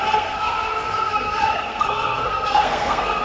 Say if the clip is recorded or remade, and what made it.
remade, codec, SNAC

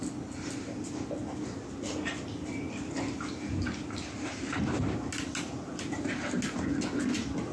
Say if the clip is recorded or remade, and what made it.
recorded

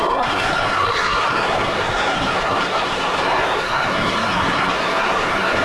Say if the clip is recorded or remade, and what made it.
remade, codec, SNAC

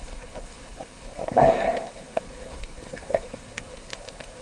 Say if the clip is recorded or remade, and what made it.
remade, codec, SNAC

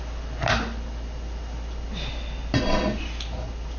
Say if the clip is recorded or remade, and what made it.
recorded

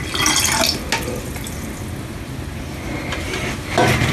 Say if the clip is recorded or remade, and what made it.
recorded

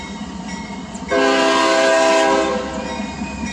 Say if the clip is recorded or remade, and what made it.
recorded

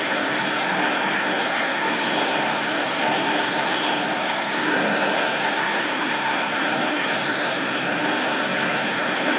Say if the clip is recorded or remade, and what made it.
remade, codec, SNAC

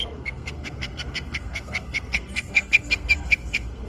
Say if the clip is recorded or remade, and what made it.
remade, codec, SNAC